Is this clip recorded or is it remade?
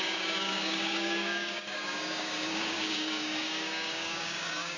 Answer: remade